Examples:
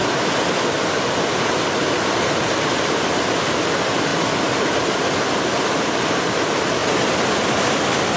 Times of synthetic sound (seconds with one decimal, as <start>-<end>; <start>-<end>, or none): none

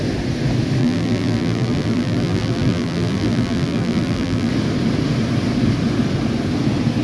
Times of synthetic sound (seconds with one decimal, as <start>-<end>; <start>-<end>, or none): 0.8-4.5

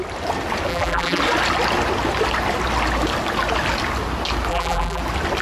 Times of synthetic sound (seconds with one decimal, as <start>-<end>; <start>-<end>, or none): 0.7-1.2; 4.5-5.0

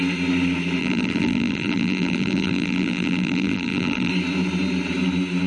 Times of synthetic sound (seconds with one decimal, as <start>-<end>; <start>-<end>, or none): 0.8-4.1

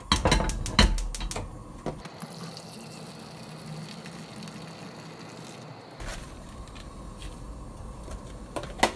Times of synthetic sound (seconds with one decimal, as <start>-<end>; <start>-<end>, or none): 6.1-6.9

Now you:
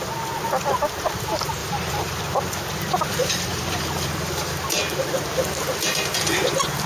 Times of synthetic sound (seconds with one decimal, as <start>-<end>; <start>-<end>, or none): 1.6-2.2; 3.2-4.5